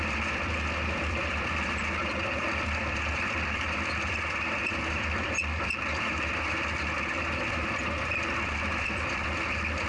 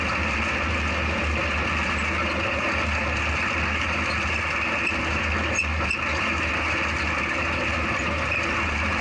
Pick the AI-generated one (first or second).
first